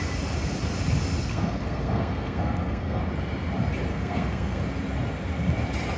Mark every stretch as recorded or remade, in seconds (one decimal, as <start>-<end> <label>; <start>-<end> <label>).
0.0-1.2 recorded; 1.2-3.0 remade; 3.0-3.9 recorded; 3.9-4.6 remade; 4.6-6.0 recorded